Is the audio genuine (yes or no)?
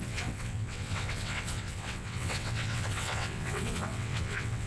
no